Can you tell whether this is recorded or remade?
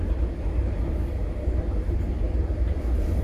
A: recorded